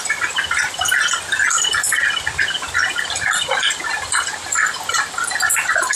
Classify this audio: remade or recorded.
recorded